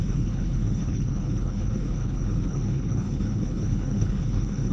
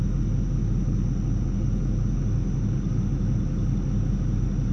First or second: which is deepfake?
first